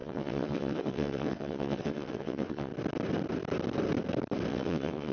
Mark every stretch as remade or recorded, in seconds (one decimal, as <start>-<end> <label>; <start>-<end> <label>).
0.0-2.7 remade; 2.7-4.5 recorded; 4.5-5.1 remade